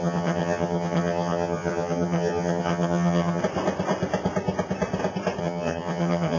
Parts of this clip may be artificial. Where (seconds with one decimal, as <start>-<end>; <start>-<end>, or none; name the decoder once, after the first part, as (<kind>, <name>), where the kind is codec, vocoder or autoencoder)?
0.0-3.4 (vocoder, HiFi-GAN); 5.4-6.4